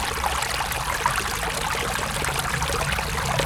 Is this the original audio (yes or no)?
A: yes